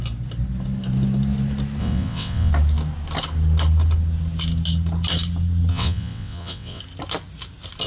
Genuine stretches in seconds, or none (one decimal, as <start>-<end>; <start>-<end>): 0.0-1.8; 2.5-5.7; 6.8-7.9